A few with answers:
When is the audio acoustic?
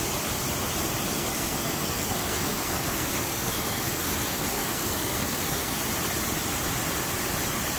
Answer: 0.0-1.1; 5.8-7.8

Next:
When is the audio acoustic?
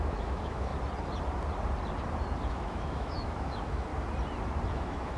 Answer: 0.7-2.5; 3.9-4.7